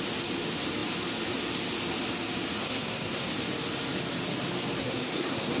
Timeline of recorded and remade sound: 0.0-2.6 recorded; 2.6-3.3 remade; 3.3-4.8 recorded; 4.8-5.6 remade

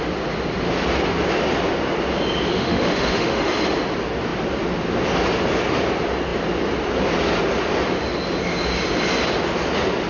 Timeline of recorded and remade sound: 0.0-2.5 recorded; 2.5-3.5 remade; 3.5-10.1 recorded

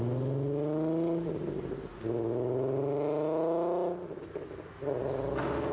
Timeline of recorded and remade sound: 0.0-5.7 recorded